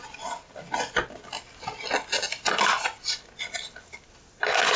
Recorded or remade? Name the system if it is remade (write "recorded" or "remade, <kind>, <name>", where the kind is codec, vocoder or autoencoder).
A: recorded